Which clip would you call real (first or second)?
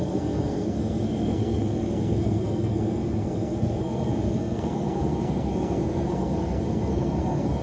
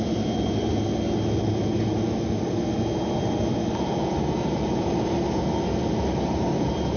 second